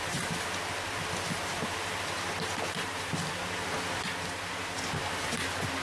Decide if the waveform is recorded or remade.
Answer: recorded